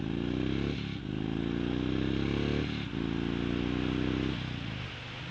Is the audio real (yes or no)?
yes